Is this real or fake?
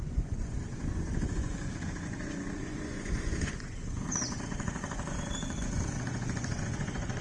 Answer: fake